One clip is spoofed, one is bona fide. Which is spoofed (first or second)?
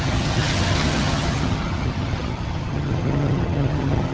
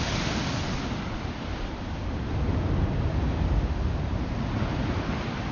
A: first